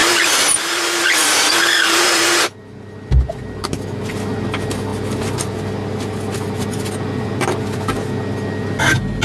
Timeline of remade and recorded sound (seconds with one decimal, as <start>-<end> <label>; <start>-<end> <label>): 0.0-2.4 remade; 2.4-9.2 recorded